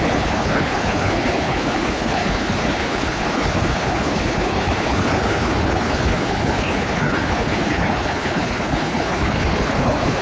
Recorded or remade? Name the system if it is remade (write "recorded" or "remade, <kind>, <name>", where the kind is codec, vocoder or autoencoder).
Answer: remade, codec, HILCodec